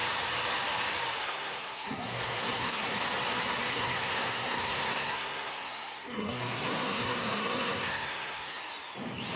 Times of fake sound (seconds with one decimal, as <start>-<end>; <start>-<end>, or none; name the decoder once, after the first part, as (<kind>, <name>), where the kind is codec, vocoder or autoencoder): 1.2-3.0 (codec, SNAC); 3.7-8.6